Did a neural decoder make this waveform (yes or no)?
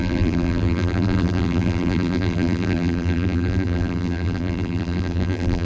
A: yes